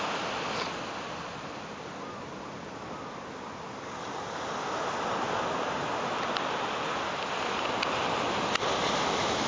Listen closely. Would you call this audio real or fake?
real